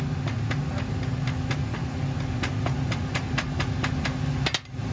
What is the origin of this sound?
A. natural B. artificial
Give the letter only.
A